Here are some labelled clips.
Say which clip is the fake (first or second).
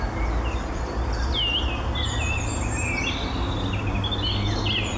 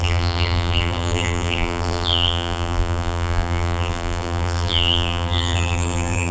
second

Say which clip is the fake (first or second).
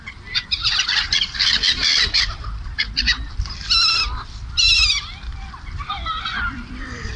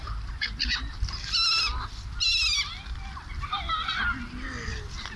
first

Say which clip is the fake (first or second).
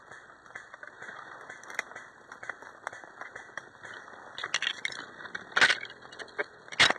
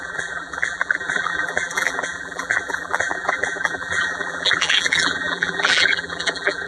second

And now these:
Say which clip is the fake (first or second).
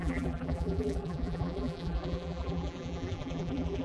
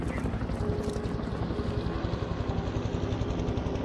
first